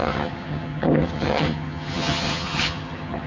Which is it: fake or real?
fake